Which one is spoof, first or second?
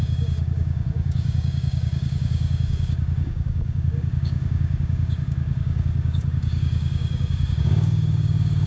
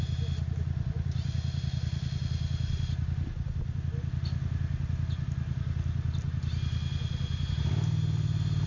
first